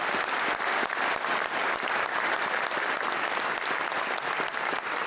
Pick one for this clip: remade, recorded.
recorded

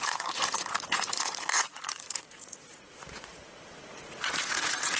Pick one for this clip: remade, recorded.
remade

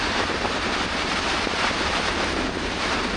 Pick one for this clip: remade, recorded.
recorded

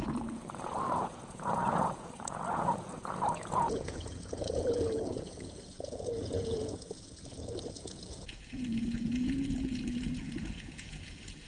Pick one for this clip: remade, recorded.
remade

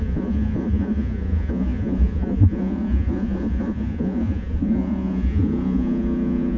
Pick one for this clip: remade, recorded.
remade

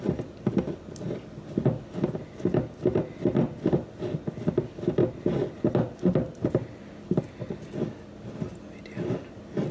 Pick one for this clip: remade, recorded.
recorded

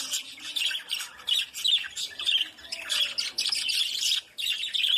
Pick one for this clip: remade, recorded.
recorded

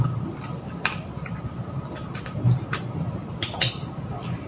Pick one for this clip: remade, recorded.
recorded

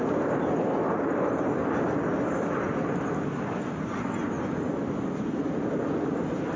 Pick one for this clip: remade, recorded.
recorded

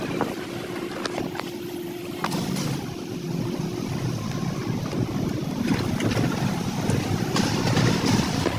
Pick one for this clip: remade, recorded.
recorded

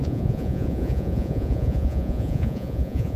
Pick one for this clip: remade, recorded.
remade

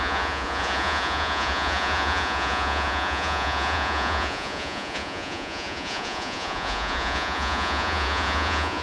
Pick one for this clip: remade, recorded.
remade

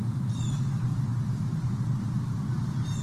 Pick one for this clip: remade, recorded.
recorded